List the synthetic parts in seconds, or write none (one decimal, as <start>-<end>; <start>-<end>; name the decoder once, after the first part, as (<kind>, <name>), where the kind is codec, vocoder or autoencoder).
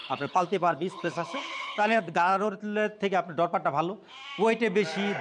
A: 0.0-2.6 (codec, HILCodec)